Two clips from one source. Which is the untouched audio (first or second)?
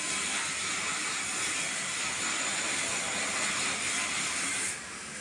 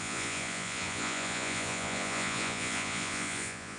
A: first